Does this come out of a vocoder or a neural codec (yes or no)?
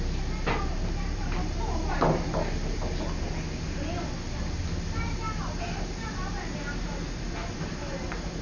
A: no